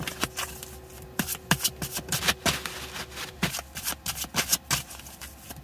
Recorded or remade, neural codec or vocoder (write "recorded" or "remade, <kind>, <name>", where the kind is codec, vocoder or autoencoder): recorded